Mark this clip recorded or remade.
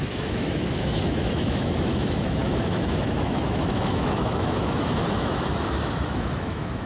remade